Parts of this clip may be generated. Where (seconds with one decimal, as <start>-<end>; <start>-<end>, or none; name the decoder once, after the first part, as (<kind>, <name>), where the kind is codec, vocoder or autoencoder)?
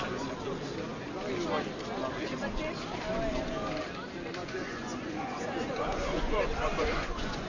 4.4-7.5 (vocoder, Vocos)